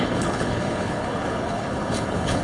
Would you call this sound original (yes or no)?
no